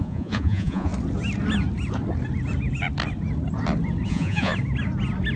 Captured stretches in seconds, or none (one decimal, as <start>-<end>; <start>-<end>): 0.9-4.1; 4.5-5.4